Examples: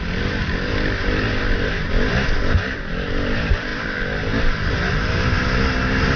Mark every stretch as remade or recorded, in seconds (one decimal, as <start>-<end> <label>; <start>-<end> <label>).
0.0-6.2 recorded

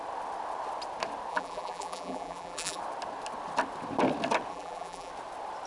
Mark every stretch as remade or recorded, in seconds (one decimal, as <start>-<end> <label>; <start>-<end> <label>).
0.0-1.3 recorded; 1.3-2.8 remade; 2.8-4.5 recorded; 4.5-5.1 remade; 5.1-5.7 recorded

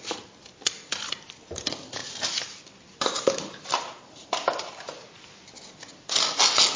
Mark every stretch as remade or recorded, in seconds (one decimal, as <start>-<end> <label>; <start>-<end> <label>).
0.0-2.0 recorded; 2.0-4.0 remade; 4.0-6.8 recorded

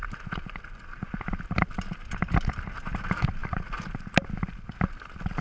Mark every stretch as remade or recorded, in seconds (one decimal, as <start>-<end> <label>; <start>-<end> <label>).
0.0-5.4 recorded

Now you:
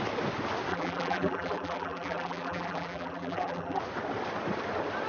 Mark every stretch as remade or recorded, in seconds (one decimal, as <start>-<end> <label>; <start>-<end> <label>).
0.0-0.7 recorded; 0.7-3.8 remade; 3.8-5.1 recorded